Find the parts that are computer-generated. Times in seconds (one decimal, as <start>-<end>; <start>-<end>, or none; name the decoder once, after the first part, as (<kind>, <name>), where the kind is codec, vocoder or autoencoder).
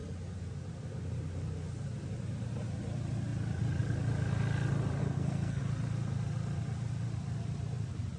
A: 5.0-5.6 (codec, SNAC)